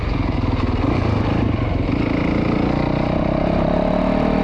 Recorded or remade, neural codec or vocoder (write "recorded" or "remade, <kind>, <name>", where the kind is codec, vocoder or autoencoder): recorded